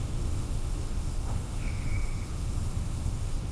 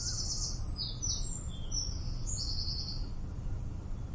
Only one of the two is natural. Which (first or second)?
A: second